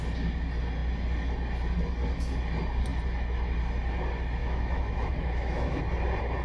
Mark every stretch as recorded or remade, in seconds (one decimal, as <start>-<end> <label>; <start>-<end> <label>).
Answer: 0.0-4.4 recorded; 4.4-5.8 remade; 5.8-6.4 recorded